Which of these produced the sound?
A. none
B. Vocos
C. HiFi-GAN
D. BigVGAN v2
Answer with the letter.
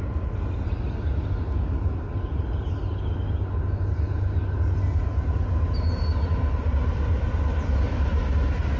A